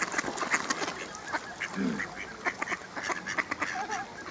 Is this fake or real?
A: real